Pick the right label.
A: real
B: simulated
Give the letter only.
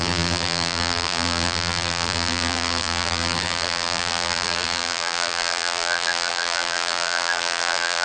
B